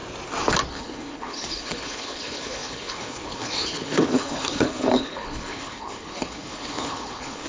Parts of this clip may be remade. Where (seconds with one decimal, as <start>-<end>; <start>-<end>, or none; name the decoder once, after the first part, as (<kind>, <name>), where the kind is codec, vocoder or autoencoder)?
0.7-7.5 (codec, HILCodec)